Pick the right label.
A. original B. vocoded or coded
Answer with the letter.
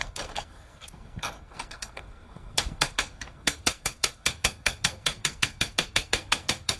B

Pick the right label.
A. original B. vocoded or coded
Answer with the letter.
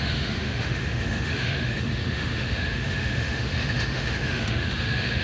B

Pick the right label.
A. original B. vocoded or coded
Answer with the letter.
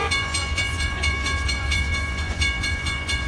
B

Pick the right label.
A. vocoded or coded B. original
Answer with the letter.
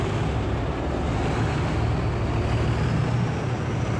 B